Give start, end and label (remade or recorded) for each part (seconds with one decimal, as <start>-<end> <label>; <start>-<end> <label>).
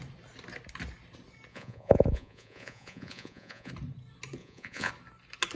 0.0-1.5 recorded; 1.5-3.7 remade; 3.7-4.4 recorded; 4.4-4.9 remade; 4.9-5.5 recorded